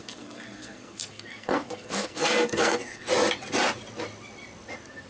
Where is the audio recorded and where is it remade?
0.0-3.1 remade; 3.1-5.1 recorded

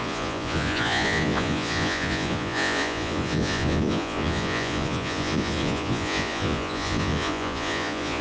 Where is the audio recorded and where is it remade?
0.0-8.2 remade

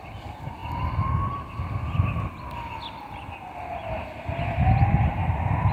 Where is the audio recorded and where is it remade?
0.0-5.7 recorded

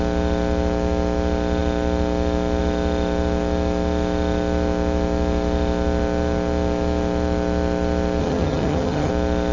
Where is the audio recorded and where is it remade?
0.0-8.2 recorded; 8.2-9.1 remade; 9.1-9.5 recorded

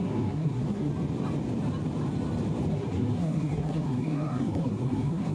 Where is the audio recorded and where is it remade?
0.0-0.9 remade; 0.9-2.7 recorded; 2.7-5.3 remade

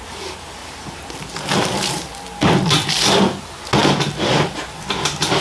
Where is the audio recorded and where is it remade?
0.0-5.4 recorded

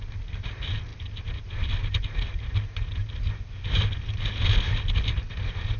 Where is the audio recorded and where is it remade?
0.0-5.8 recorded

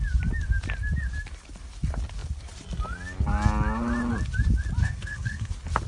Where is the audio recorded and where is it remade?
0.0-4.8 recorded; 4.8-5.5 remade; 5.5-5.9 recorded